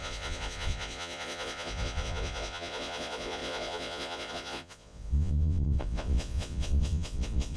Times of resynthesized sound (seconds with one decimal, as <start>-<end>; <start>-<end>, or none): 0.0-7.6

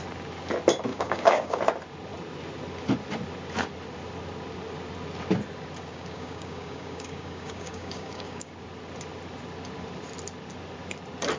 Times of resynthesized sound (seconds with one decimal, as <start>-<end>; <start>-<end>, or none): 0.9-1.6; 5.9-8.5

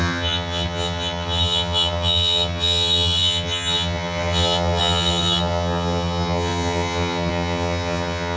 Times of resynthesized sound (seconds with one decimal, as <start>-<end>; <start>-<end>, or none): 0.0-8.4

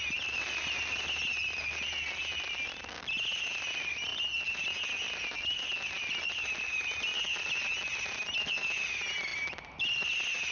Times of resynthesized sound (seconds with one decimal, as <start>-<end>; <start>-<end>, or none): none

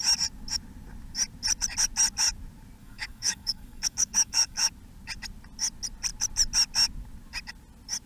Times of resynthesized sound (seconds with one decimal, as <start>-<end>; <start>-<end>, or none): 2.8-4.7

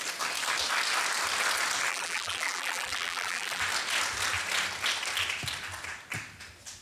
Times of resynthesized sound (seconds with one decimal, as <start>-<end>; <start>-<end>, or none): 1.9-3.6

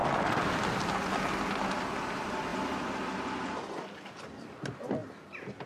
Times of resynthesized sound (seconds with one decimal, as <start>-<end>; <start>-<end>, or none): 0.0-2.5; 3.8-5.7

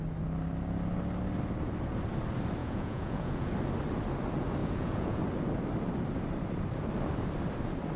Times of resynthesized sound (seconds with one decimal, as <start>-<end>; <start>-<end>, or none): 2.6-3.5; 4.6-5.2